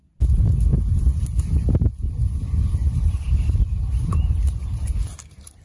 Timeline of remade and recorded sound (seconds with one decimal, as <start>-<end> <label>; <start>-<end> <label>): 0.0-0.7 recorded; 0.7-2.4 remade; 2.4-2.8 recorded; 2.8-4.8 remade; 4.8-5.6 recorded